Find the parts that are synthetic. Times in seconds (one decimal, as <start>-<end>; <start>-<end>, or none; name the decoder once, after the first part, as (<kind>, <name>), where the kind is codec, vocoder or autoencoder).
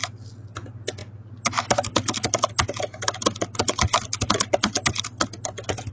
none